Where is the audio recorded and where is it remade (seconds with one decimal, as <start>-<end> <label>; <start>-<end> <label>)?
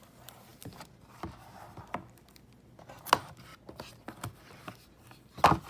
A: 0.0-5.7 recorded